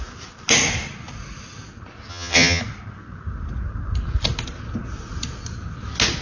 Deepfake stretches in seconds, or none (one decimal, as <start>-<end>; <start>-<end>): 2.1-2.6